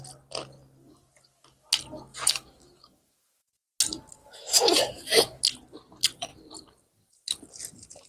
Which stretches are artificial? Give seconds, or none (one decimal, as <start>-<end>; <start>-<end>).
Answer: 2.1-3.5; 4.2-5.4